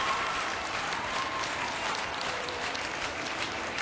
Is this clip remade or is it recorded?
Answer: recorded